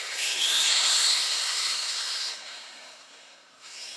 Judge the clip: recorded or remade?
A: remade